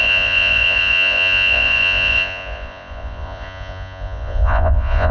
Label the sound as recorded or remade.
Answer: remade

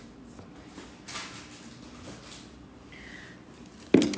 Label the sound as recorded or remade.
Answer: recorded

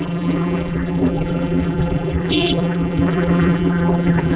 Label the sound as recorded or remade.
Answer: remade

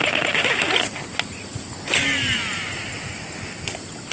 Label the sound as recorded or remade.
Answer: recorded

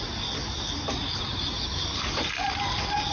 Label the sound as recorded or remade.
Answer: recorded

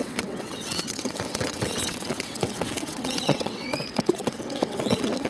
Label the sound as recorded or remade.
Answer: remade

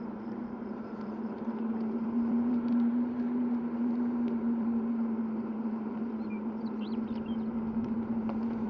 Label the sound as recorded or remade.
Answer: remade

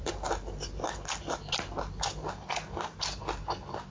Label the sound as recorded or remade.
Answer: recorded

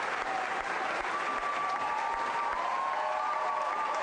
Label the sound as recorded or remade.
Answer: recorded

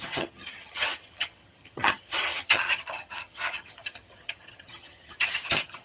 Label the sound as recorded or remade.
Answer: remade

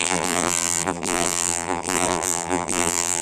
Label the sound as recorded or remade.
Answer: remade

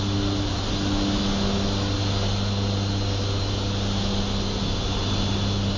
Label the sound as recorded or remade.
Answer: recorded